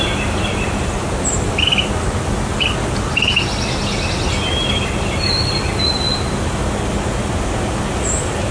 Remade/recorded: recorded